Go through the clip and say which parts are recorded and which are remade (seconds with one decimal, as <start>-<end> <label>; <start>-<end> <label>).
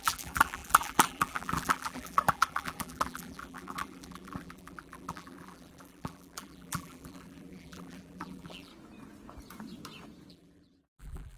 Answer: 0.0-8.7 remade; 8.7-10.3 recorded; 10.3-11.4 remade